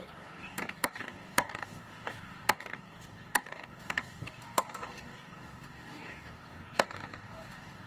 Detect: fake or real fake